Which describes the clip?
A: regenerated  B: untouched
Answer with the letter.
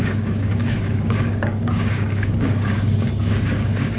A